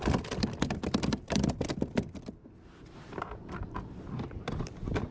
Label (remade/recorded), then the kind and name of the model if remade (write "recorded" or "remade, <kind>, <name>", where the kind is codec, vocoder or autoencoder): recorded